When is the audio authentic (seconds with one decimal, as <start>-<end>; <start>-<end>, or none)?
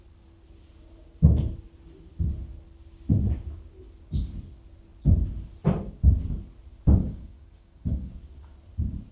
0.0-7.0; 8.1-9.1